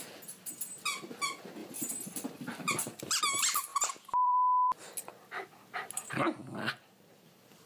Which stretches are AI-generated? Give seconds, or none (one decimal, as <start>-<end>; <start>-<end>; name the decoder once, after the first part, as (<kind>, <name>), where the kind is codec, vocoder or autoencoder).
1.6-3.2 (vocoder, BigVGAN v2); 3.7-4.8; 6.4-7.7